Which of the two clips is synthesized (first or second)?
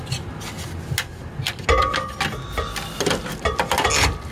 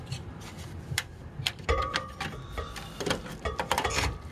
second